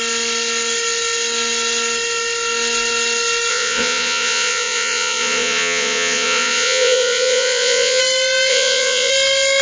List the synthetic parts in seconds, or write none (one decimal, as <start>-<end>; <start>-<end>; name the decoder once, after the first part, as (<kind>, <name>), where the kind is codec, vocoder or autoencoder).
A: 3.5-8.0 (vocoder, Vocos); 8.5-9.1